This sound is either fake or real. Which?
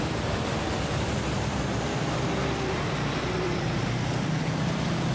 fake